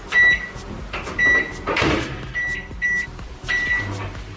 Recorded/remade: recorded